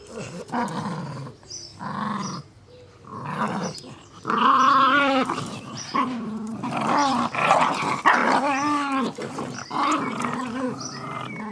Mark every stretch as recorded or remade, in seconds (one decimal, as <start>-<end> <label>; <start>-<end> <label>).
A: 0.0-3.1 recorded; 3.1-7.7 remade; 7.7-11.5 recorded